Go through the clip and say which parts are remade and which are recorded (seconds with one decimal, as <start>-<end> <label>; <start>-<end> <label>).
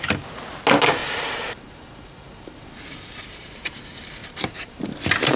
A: 0.0-1.0 recorded; 1.0-3.8 remade; 3.8-4.2 recorded; 4.2-4.8 remade; 4.8-5.4 recorded